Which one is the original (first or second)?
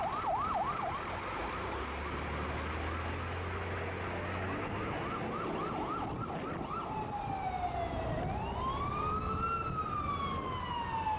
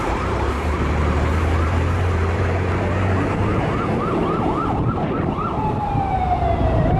first